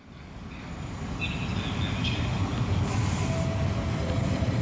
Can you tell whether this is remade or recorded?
recorded